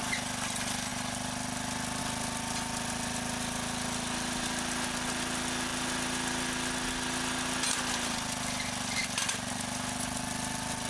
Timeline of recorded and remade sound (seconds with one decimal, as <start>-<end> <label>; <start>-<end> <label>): 0.0-10.9 recorded